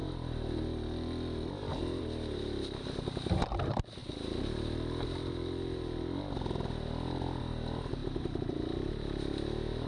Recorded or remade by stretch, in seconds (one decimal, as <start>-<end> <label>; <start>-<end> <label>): 0.0-9.9 recorded